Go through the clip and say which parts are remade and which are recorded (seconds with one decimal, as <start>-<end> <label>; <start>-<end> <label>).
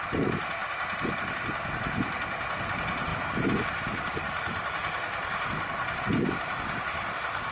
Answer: 0.0-7.5 recorded